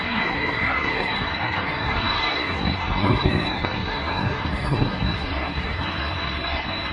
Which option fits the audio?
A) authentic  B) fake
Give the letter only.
B